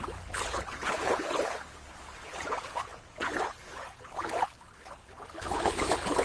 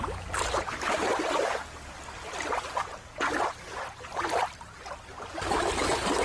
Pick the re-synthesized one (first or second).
first